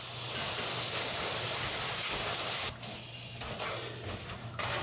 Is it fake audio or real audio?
real